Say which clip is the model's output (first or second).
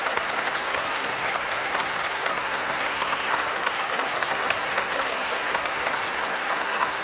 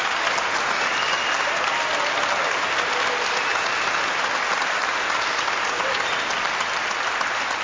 first